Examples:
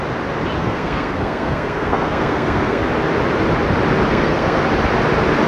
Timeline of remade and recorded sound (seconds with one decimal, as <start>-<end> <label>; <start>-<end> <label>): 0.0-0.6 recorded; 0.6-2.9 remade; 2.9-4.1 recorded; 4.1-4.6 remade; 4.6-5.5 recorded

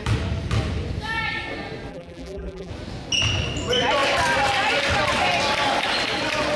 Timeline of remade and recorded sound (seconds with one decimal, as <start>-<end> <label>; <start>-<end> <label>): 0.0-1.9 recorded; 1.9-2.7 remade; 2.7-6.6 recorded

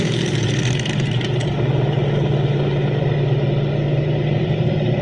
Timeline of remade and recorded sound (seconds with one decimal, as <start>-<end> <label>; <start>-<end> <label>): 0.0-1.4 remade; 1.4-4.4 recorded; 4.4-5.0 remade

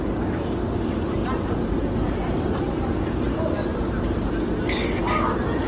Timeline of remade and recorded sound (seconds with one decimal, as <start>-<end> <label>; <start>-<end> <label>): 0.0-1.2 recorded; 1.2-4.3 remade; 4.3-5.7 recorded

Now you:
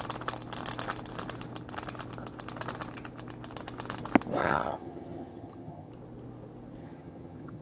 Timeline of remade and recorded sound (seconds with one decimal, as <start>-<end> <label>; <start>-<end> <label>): 0.0-4.4 recorded; 4.4-5.9 remade; 5.9-6.8 recorded; 6.8-7.6 remade

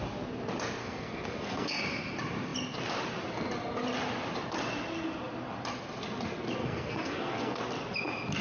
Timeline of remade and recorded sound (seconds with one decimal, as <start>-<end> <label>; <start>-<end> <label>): 0.0-0.8 recorded; 0.8-1.8 remade; 1.8-6.6 recorded; 6.6-7.6 remade; 7.6-8.4 recorded

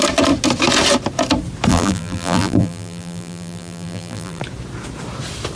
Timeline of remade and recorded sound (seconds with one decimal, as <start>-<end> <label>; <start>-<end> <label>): 0.0-1.7 recorded; 1.7-4.4 remade; 4.4-5.6 recorded